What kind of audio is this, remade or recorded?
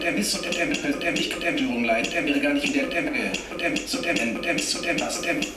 recorded